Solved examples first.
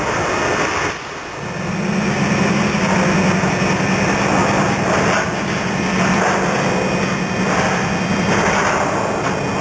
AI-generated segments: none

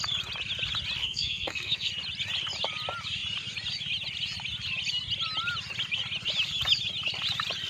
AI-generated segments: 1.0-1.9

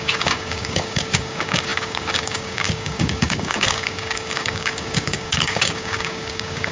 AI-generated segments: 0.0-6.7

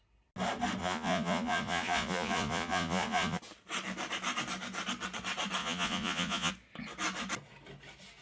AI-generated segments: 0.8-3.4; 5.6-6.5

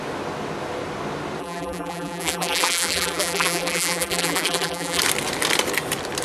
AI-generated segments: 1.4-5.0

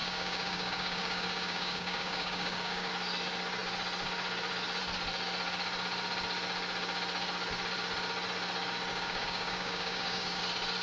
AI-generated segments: 0.0-2.9; 8.9-10.4